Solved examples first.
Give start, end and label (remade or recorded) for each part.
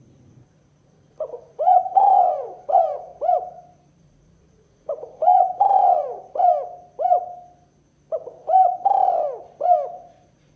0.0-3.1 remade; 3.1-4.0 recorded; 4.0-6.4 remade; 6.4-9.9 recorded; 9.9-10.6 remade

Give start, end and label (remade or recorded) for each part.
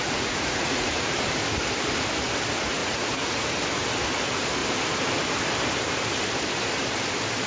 0.0-0.9 remade; 0.9-2.8 recorded; 2.8-3.5 remade; 3.5-7.5 recorded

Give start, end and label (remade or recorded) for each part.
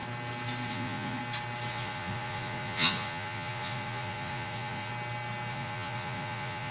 0.0-0.7 recorded; 0.7-1.2 remade; 1.2-1.7 recorded; 1.7-4.9 remade; 4.9-5.5 recorded; 5.5-6.7 remade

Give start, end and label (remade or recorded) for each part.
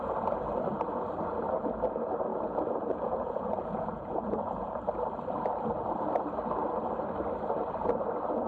0.0-2.3 recorded; 2.3-4.8 remade; 4.8-8.5 recorded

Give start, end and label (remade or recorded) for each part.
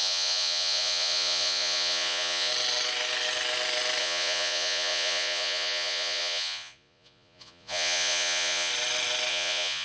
0.0-2.5 remade; 2.5-4.0 recorded; 4.0-8.7 remade; 8.7-9.3 recorded; 9.3-9.8 remade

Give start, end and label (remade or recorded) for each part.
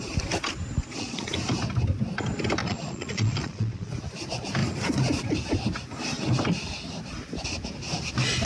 0.0-0.8 recorded; 0.8-1.3 remade; 1.3-2.6 recorded; 2.6-3.9 remade; 3.9-8.5 recorded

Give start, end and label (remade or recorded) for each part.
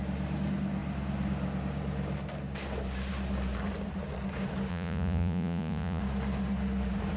0.0-4.7 recorded; 4.7-6.0 remade; 6.0-7.2 recorded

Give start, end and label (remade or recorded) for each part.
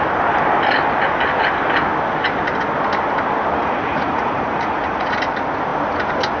0.0-3.6 recorded; 3.6-5.1 remade; 5.1-6.4 recorded